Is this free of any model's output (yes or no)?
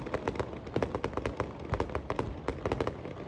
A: yes